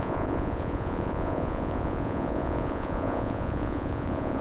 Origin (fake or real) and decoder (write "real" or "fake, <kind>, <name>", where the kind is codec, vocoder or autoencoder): fake, vocoder, Vocos